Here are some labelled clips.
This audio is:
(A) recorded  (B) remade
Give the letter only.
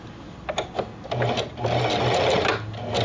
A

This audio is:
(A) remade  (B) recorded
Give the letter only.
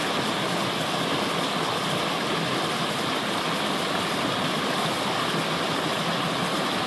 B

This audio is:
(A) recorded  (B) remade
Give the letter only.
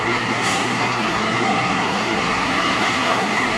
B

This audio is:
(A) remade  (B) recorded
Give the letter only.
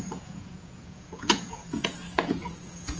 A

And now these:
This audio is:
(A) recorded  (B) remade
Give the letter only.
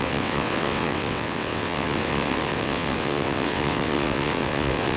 B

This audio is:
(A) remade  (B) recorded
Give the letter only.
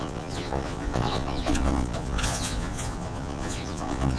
A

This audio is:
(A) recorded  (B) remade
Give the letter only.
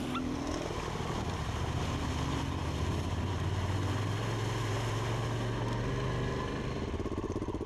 A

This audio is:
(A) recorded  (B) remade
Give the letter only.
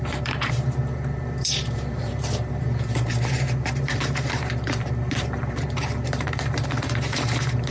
B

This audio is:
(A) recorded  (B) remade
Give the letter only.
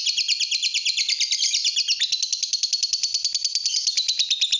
A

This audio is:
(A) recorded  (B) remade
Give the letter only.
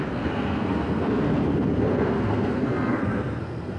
B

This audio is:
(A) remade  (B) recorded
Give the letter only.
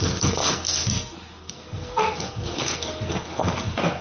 A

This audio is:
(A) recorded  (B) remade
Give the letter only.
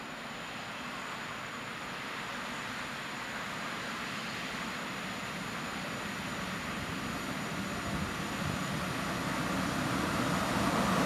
A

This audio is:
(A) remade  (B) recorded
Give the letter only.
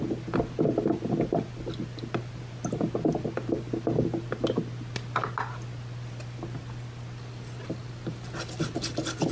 B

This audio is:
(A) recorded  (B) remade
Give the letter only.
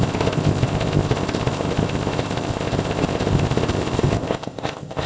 B